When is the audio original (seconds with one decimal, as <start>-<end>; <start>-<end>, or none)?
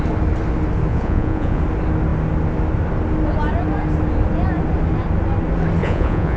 0.0-0.9; 1.6-5.8